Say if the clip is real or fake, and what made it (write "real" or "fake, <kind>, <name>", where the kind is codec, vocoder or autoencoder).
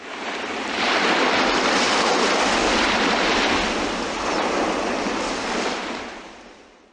real